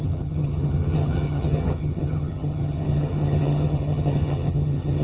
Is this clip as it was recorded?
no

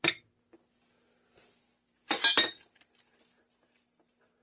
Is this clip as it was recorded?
yes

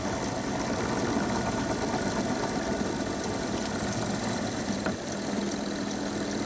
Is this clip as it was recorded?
yes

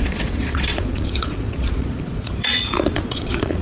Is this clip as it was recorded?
no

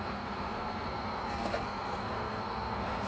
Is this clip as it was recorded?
no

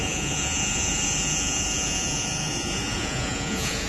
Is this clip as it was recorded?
no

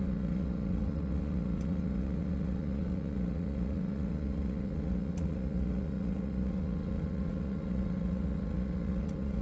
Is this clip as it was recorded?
no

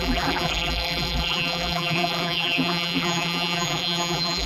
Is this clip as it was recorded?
no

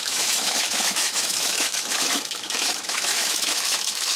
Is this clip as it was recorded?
no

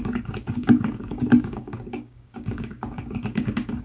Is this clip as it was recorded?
no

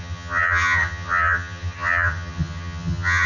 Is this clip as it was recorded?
no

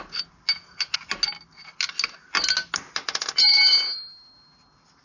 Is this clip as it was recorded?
yes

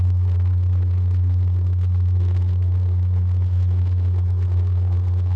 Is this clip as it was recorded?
no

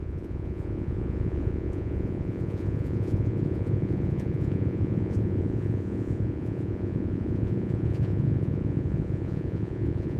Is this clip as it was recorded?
no